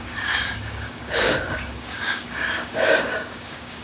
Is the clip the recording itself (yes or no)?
no